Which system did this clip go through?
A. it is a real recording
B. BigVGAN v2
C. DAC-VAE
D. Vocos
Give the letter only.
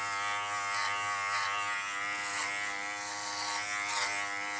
A